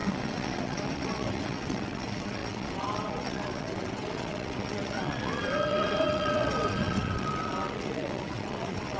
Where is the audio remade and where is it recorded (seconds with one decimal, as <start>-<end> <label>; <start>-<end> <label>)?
0.0-9.0 remade